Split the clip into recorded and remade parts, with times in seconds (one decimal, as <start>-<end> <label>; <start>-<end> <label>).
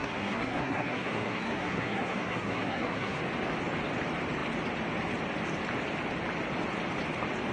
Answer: 0.0-3.2 remade; 3.2-7.5 recorded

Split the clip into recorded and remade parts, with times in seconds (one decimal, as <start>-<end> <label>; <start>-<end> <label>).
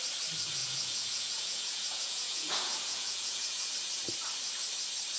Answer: 0.0-0.6 recorded; 0.6-3.7 remade; 3.7-5.2 recorded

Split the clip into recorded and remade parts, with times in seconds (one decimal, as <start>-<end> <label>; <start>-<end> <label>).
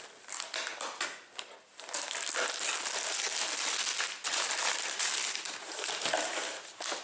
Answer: 0.0-4.3 recorded; 4.3-6.3 remade; 6.3-7.0 recorded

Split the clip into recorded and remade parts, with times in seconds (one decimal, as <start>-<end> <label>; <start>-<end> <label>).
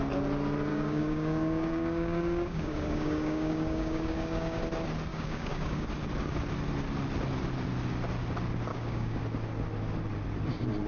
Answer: 0.0-0.7 recorded; 0.7-4.6 remade; 4.6-5.1 recorded; 5.1-5.8 remade; 5.8-8.7 recorded; 8.7-9.2 remade; 9.2-10.9 recorded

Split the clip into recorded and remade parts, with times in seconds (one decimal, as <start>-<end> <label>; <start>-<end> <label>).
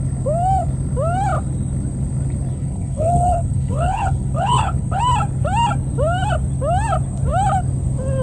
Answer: 0.0-2.5 recorded; 2.5-5.0 remade; 5.0-8.2 recorded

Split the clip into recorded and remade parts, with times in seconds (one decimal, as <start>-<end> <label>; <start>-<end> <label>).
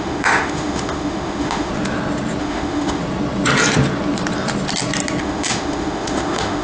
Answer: 0.0-1.7 remade; 1.7-2.4 recorded; 2.4-3.0 remade; 3.0-5.2 recorded; 5.2-6.6 remade